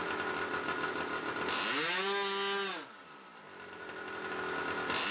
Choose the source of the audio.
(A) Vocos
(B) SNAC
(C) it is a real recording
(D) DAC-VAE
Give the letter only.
C